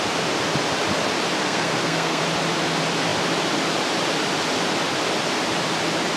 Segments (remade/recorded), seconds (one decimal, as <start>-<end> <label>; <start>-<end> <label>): 0.0-1.4 recorded; 1.4-2.2 remade; 2.2-6.2 recorded